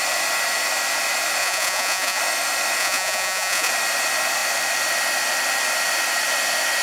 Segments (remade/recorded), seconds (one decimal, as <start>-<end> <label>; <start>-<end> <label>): 0.0-1.4 recorded; 1.4-2.2 remade; 2.2-2.8 recorded; 2.8-3.7 remade; 3.7-6.8 recorded